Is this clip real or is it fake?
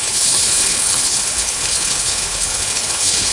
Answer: fake